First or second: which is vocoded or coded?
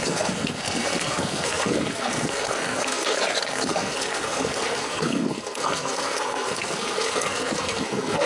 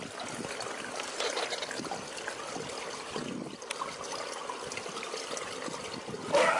first